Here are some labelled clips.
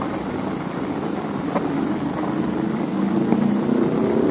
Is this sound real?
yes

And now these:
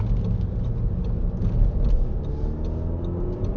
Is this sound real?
yes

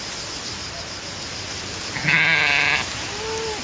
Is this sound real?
yes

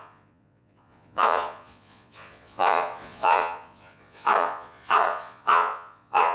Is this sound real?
no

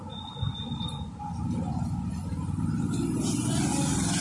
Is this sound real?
yes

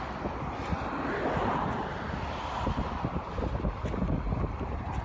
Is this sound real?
yes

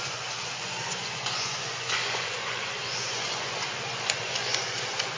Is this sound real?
no